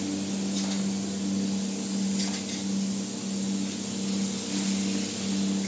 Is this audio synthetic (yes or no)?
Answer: no